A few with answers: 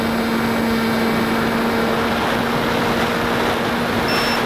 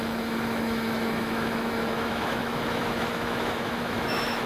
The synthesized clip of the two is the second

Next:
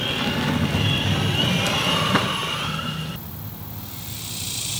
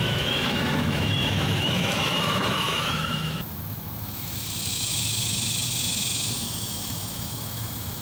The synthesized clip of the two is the second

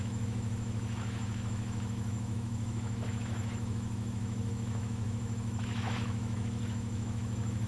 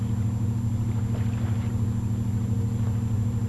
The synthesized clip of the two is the first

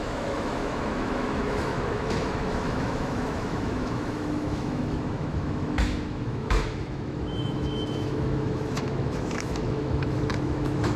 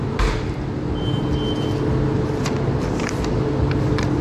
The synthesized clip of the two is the first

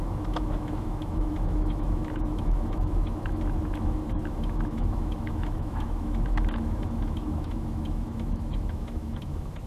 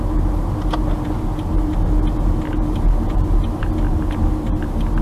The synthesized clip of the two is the first